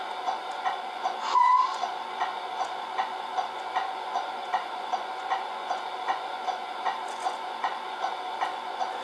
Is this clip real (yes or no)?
no